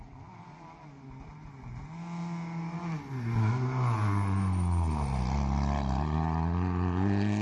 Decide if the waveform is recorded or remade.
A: recorded